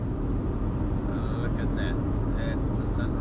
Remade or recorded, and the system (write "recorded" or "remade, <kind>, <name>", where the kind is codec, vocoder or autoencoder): recorded